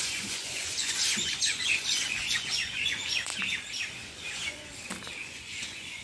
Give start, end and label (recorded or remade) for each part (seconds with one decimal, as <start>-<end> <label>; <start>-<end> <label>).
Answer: 0.0-3.3 remade; 3.3-3.9 recorded; 3.9-4.7 remade; 4.7-5.2 recorded; 5.2-6.0 remade